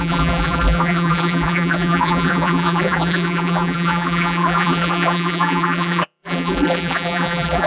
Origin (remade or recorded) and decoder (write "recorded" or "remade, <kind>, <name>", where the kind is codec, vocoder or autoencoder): remade, vocoder, BigVGAN v2